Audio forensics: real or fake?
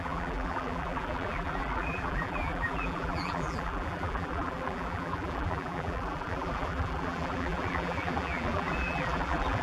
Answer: fake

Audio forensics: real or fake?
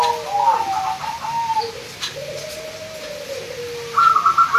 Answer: real